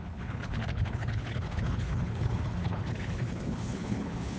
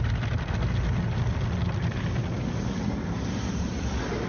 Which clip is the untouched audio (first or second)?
second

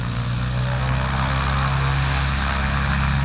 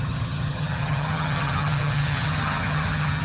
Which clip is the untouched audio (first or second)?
first